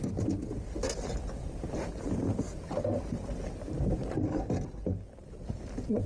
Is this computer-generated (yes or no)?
no